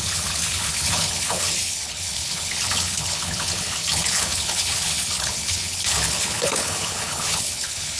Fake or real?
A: fake